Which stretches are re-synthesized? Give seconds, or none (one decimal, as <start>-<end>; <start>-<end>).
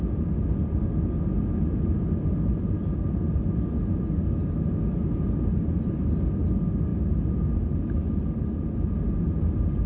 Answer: none